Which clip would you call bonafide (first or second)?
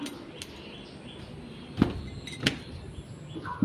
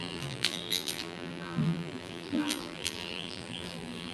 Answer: first